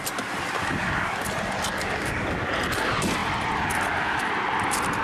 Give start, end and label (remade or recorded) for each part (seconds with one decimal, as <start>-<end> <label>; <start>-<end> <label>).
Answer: 0.0-0.6 recorded; 0.6-1.2 remade; 1.2-1.7 recorded; 1.7-2.5 remade; 2.5-5.0 recorded